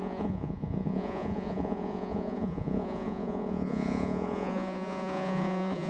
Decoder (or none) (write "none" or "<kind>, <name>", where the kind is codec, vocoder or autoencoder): vocoder, Vocos